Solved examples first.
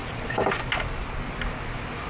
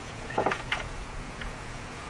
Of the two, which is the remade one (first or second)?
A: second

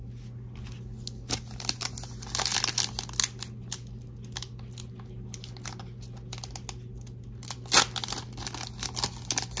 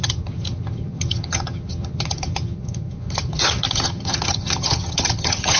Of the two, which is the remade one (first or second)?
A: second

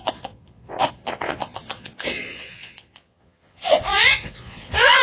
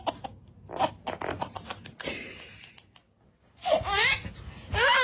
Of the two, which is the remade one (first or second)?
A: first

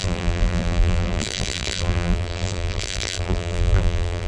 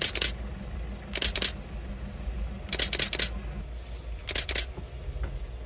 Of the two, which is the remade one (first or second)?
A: first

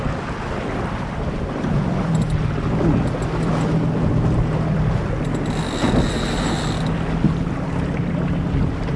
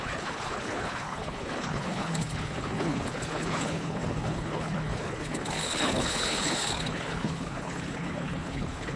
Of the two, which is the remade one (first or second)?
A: second